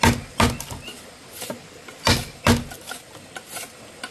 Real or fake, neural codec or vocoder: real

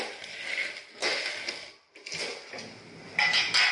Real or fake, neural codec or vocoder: real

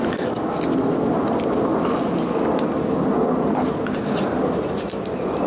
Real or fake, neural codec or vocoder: real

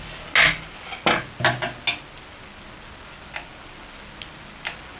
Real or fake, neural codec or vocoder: real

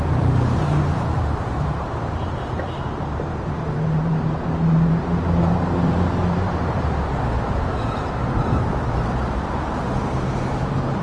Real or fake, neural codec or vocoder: fake, vocoder, BigVGAN v2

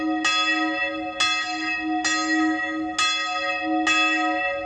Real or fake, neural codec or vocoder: real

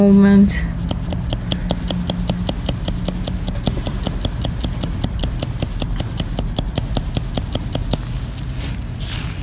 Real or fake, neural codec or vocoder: real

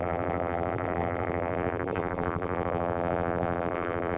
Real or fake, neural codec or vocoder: fake, vocoder, BigVGAN v2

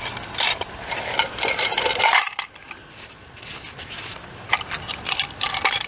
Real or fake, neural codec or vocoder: fake, vocoder, BigVGAN v2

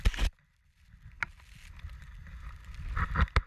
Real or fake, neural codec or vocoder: real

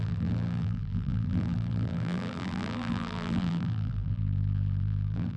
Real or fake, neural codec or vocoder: fake, vocoder, BigVGAN v2